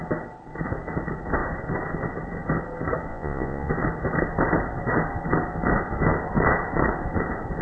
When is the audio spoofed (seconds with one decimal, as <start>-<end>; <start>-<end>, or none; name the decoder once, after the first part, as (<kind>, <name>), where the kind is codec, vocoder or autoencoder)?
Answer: 3.1-3.7 (vocoder, Vocos)